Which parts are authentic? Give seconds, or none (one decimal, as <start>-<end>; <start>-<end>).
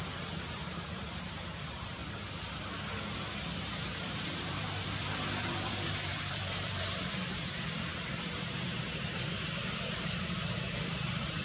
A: 2.0-3.6